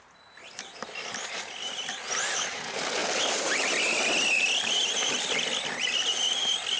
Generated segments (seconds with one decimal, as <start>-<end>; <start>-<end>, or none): none

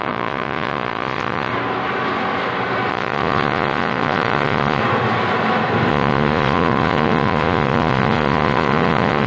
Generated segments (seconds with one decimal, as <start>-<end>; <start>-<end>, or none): 0.0-1.5; 2.9-4.8; 5.9-9.3

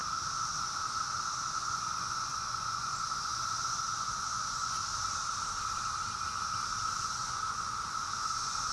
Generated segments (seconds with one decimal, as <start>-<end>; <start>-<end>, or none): 1.5-4.8; 7.0-8.7

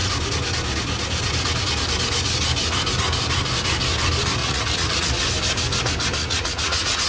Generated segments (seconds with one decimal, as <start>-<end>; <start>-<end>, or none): 4.4-5.2; 6.2-7.1

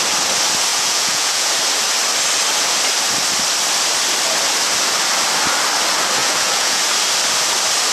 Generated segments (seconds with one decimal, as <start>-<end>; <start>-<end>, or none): 0.7-1.5; 6.2-6.8